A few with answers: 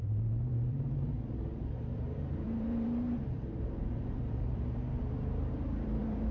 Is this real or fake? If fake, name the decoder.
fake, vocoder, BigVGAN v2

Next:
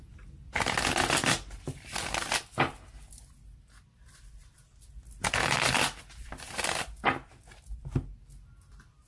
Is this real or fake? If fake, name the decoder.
real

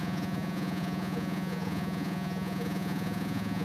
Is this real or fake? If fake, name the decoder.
fake, vocoder, Vocos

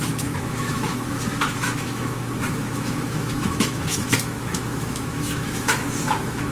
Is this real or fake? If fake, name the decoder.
fake, autoencoder, DAC-VAE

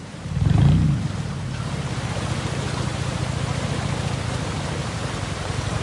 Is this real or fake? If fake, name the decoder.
fake, vocoder, BigVGAN v2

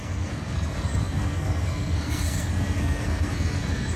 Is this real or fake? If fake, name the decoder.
fake, codec, SNAC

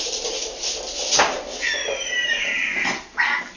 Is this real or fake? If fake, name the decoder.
real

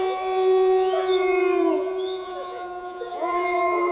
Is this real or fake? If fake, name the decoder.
fake, vocoder, Vocos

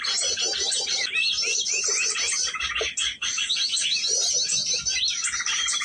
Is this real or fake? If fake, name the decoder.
real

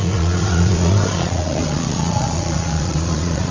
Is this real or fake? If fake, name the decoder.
fake, vocoder, Vocos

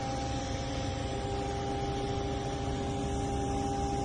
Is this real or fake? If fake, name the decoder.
real